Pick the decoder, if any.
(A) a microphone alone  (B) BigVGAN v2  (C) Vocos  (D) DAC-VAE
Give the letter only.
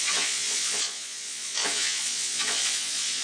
C